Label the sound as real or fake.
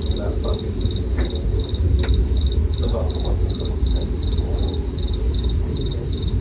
real